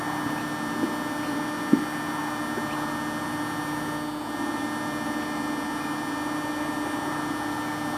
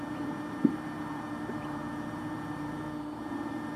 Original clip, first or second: first